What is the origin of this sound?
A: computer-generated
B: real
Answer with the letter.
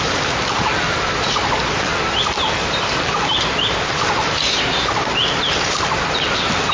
A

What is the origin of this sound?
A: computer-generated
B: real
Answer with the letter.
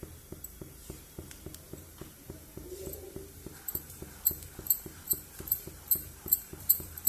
A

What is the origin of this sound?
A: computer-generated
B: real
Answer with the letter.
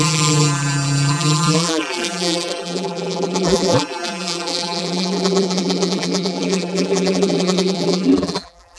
A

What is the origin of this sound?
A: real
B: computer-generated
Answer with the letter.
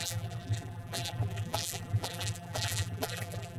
B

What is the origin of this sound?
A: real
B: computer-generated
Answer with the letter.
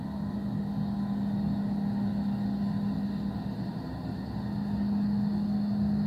A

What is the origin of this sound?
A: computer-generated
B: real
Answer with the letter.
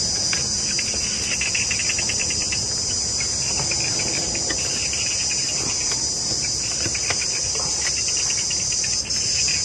B